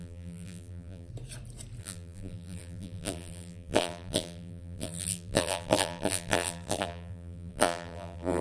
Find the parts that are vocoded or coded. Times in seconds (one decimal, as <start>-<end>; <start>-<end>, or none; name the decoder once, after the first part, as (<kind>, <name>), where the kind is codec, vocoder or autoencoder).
0.0-1.1 (vocoder, BigVGAN v2); 1.8-8.4